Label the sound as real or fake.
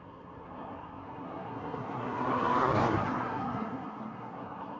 fake